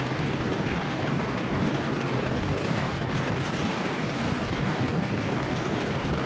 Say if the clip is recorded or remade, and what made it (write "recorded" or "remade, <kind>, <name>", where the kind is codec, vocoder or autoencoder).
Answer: remade, codec, DAC